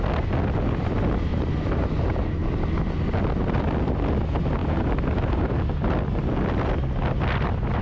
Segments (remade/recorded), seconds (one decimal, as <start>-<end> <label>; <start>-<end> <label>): 0.0-1.3 recorded; 1.3-2.5 remade; 2.5-4.6 recorded; 4.6-5.6 remade; 5.6-7.8 recorded